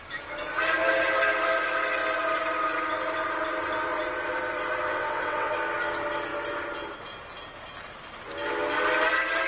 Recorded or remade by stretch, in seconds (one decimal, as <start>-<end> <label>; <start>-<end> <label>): 0.0-4.9 recorded; 4.9-5.5 remade; 5.5-9.5 recorded